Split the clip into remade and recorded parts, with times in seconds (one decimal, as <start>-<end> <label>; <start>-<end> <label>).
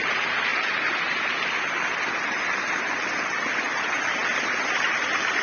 0.0-5.4 recorded